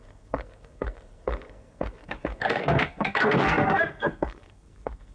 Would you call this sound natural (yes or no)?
no